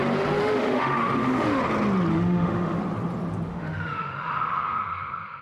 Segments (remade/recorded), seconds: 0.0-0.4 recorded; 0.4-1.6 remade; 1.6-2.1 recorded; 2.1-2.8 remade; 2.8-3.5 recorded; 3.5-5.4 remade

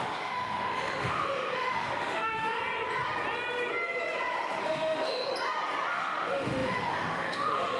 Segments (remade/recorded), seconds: 0.0-2.6 remade; 2.6-4.6 recorded; 4.6-5.3 remade; 5.3-5.9 recorded; 5.9-7.8 remade